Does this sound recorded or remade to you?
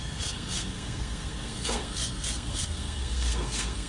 remade